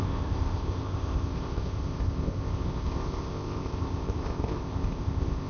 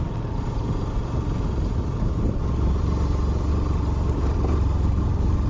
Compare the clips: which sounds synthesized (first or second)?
first